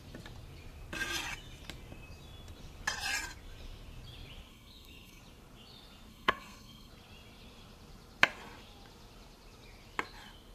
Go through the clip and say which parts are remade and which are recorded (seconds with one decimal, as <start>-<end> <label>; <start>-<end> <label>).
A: 0.0-4.5 recorded; 4.5-5.2 remade; 5.2-6.1 recorded; 6.1-6.9 remade; 6.9-10.5 recorded